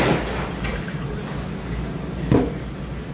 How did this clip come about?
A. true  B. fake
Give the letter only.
A